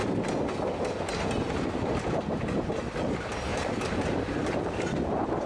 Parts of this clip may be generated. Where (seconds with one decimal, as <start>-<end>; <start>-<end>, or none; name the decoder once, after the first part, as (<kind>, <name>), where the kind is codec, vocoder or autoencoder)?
3.5-4.3 (vocoder, BigVGAN v2)